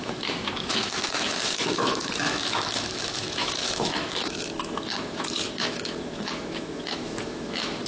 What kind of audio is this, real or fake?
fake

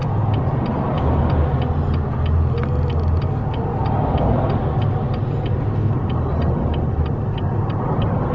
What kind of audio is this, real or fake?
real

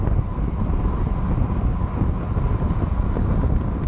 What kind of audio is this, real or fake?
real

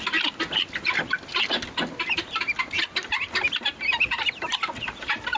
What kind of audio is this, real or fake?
real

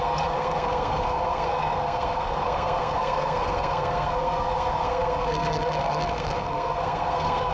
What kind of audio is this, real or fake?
fake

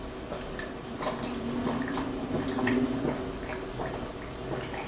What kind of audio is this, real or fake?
real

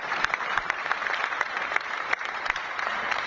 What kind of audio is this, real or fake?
fake